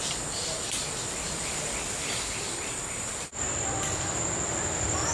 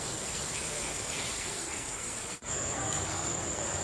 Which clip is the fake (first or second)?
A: second